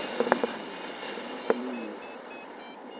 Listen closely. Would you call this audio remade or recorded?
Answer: recorded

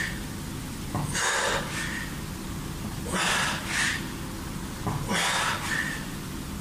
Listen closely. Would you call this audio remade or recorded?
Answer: recorded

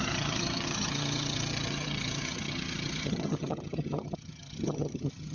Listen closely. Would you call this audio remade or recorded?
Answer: remade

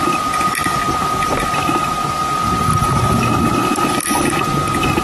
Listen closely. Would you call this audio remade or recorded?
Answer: recorded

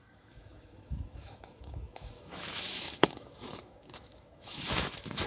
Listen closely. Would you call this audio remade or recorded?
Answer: remade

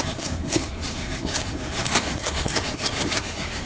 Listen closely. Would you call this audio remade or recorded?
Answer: remade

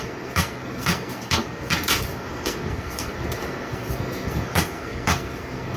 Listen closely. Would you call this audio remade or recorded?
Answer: remade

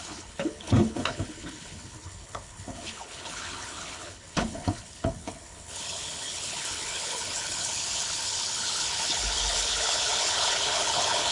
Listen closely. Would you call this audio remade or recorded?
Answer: remade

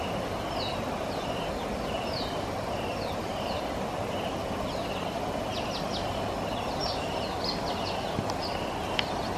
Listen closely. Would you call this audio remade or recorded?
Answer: recorded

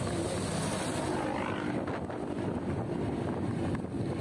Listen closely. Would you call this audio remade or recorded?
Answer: recorded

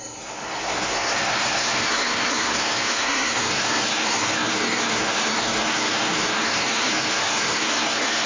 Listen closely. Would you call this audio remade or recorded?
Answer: remade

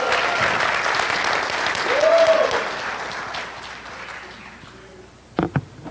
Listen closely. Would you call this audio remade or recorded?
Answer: recorded